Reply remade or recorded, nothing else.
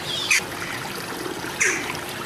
remade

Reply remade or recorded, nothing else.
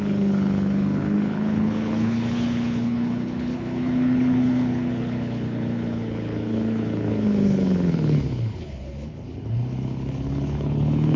remade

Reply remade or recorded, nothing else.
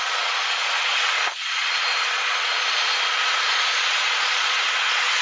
remade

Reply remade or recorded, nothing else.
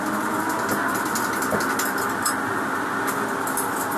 recorded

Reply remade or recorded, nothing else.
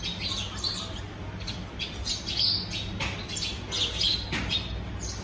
recorded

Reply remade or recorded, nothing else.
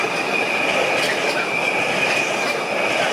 recorded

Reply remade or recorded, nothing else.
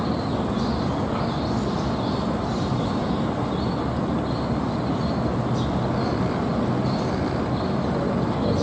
recorded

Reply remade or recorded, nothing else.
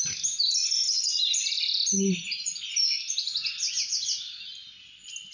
recorded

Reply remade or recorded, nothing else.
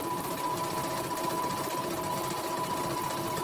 recorded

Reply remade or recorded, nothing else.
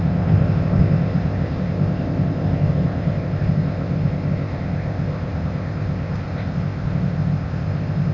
remade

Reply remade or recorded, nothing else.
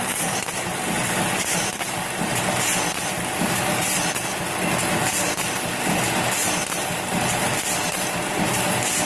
remade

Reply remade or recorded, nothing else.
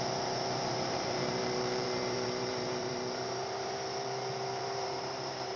remade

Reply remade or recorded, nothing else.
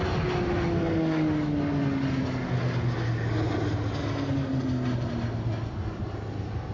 recorded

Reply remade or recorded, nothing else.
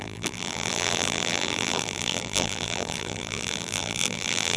remade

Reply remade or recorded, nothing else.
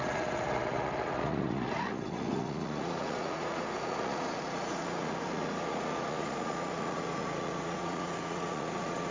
remade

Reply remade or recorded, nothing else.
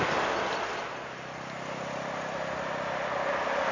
recorded